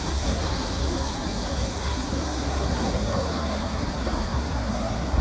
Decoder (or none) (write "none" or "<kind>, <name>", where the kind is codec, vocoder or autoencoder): codec, SNAC